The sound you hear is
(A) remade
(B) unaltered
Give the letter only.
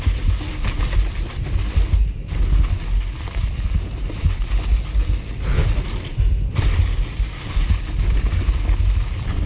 B